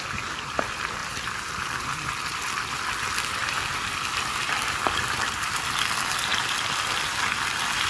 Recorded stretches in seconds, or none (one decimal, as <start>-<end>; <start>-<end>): 0.0-1.0; 2.9-3.4; 5.5-6.3